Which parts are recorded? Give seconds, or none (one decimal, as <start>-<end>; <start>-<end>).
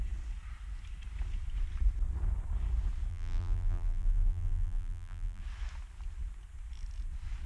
0.0-3.1; 5.4-7.5